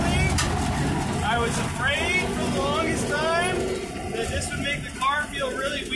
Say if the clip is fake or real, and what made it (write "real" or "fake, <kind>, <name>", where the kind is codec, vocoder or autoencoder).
real